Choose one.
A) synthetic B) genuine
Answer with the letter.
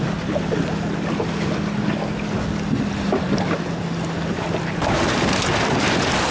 B